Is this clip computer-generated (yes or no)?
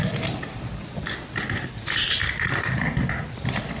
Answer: no